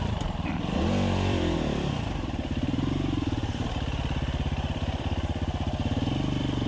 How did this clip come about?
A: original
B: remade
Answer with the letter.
B